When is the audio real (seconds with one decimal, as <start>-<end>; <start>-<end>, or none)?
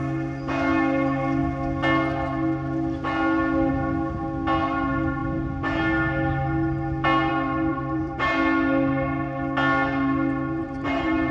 0.0-7.7; 8.3-10.6